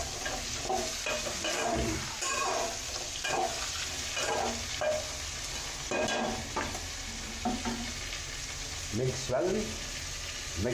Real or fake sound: real